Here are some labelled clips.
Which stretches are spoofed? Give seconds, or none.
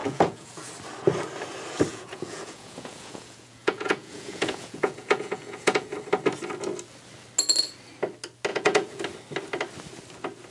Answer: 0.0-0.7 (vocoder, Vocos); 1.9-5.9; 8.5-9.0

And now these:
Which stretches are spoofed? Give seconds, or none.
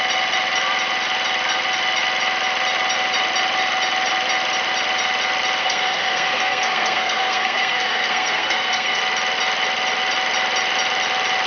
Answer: 5.6-9.0 (codec, SNAC)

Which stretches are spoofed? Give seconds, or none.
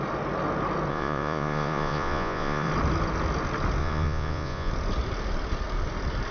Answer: 0.9-2.7 (vocoder, Vocos); 3.8-4.7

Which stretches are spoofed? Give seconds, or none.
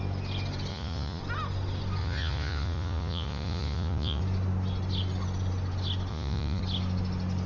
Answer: 0.7-1.2 (vocoder, Vocos); 2.0-4.2; 6.1-6.6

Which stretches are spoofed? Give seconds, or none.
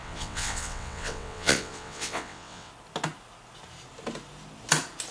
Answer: 0.0-2.7 (vocoder, WaveNeXt)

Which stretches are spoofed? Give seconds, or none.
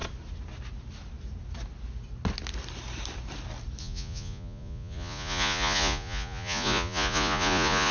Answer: 3.8-7.9 (vocoder, Vocos)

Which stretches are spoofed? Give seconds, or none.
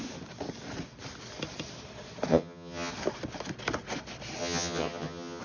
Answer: 2.3-2.9 (vocoder, HiFi-GAN); 4.4-5.4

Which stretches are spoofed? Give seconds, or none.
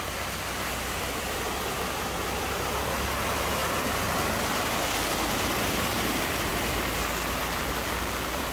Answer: none